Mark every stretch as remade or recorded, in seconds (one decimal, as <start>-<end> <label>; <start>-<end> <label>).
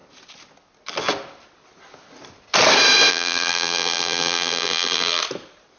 0.0-3.1 recorded; 3.1-5.2 remade; 5.2-5.8 recorded